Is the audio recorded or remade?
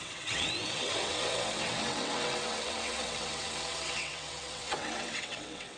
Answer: remade